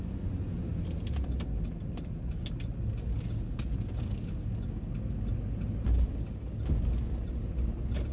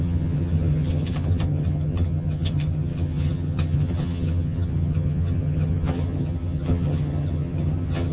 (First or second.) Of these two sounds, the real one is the first